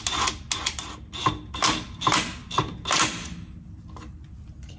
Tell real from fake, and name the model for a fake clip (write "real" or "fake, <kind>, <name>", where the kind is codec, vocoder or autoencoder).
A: real